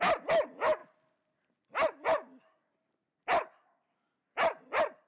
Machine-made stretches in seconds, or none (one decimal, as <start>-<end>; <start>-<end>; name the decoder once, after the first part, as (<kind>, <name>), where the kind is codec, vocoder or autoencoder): none